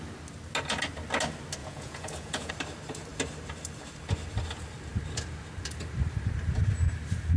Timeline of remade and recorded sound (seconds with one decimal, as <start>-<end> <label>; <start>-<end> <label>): 0.0-1.6 recorded; 1.6-2.5 remade; 2.5-7.4 recorded